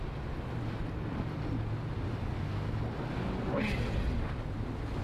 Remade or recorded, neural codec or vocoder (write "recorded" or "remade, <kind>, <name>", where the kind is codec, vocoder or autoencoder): recorded